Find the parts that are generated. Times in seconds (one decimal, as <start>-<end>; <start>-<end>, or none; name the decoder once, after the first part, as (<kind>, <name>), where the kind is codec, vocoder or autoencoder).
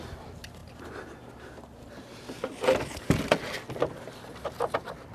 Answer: none